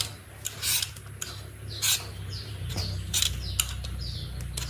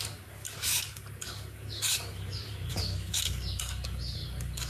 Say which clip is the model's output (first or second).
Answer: second